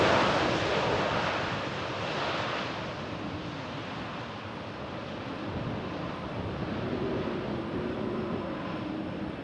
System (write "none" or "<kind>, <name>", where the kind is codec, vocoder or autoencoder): none